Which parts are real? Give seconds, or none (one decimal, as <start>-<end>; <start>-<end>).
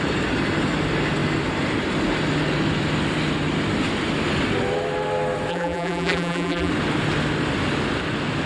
0.0-5.5; 6.7-8.5